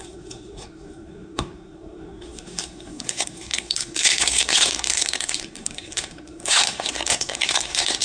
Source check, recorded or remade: remade